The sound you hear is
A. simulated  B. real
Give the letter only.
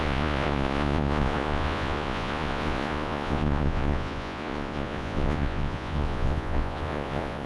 A